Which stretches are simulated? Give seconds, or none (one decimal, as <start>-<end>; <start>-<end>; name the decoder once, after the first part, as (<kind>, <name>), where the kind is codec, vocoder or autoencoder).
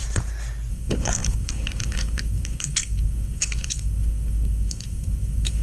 0.7-5.6 (codec, SNAC)